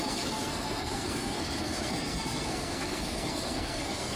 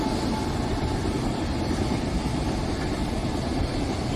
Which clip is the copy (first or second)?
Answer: first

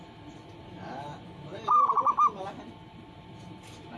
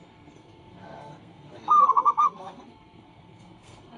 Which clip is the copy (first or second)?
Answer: second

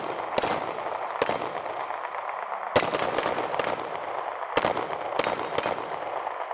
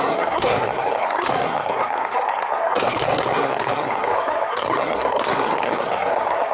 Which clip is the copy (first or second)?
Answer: second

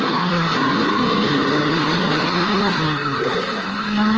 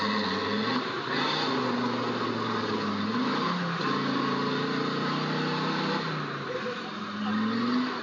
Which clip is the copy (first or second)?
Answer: first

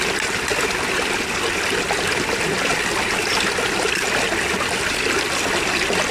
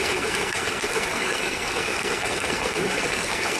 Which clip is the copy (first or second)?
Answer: second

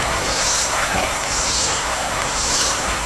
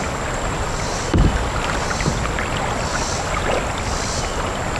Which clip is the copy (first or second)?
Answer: first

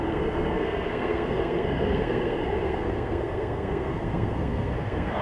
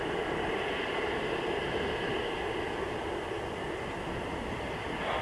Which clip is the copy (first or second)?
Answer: first